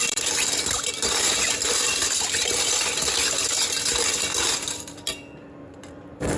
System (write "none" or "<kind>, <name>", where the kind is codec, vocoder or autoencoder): vocoder, BigVGAN v2